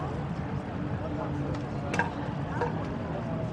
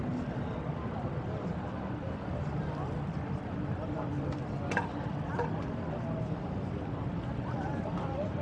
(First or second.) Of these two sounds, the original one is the first